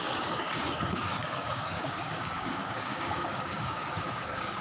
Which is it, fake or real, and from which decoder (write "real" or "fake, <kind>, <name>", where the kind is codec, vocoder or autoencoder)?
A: fake, codec, DAC